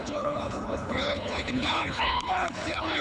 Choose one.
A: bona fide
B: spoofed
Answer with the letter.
B